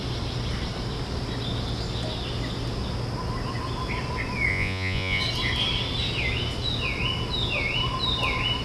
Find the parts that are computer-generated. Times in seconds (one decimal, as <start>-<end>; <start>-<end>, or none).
4.5-5.2